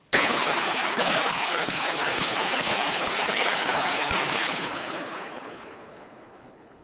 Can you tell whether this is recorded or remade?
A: remade